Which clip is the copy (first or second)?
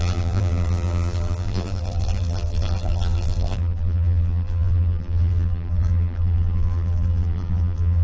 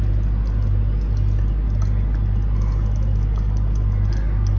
first